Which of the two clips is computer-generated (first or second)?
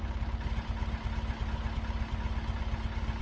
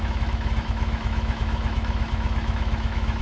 second